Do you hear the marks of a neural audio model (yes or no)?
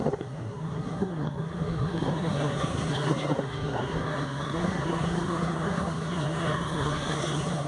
yes